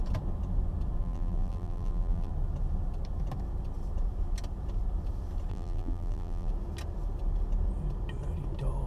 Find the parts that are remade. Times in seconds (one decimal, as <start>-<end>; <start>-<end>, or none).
1.0-2.3; 5.5-6.5